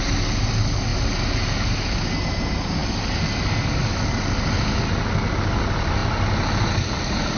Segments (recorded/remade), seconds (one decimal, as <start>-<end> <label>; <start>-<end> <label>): 0.0-7.4 recorded